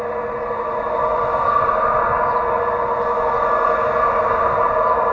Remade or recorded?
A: recorded